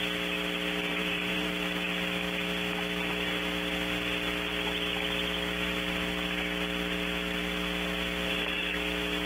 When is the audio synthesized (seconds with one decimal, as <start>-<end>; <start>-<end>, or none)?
0.9-1.5